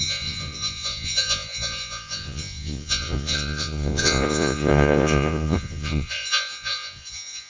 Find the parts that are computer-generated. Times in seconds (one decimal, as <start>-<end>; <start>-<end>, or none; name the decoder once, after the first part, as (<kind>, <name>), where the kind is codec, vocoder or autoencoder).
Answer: 0.0-7.5 (vocoder, Vocos)